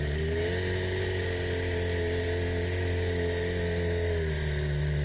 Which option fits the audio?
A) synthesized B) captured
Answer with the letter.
B